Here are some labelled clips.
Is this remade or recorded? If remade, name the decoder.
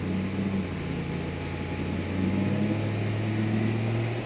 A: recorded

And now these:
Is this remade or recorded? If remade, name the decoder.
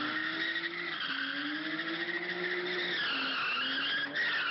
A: recorded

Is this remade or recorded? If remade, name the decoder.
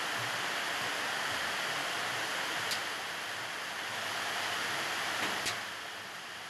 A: recorded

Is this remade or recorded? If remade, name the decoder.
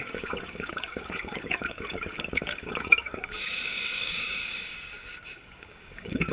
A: remade, codec, DAC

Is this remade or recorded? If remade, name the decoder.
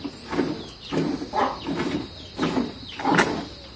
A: recorded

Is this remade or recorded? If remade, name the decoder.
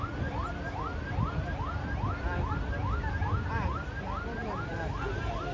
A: recorded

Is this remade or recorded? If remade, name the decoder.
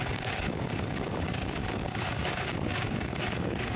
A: remade, codec, DAC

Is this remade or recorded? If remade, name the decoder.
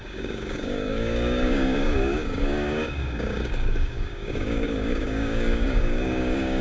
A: remade, codec, DAC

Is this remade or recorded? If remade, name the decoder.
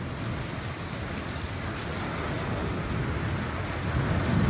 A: recorded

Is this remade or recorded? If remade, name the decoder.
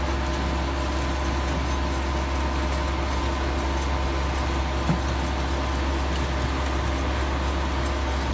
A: recorded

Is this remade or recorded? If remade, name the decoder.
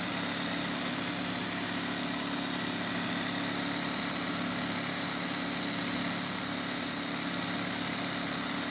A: recorded